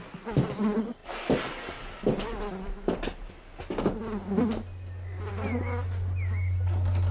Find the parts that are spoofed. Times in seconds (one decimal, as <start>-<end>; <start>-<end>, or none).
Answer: none